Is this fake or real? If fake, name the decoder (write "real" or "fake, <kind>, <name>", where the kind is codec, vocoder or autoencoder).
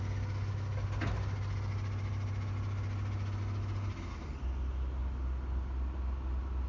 real